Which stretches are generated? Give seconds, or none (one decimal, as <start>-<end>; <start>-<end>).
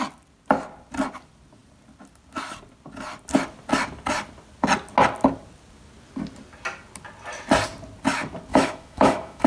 8.5-9.5